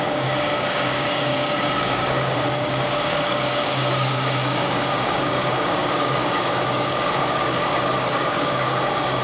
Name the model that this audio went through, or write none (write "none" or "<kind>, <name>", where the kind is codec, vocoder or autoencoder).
codec, DAC